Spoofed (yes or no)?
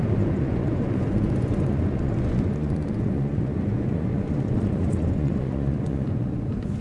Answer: yes